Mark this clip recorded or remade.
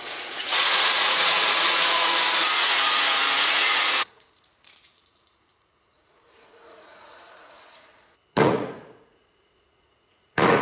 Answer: remade